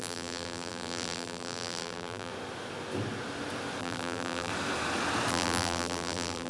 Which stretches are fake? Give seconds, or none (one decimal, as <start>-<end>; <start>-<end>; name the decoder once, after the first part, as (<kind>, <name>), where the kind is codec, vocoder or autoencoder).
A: 0.0-2.3 (vocoder, BigVGAN v2); 3.8-4.5; 5.3-6.5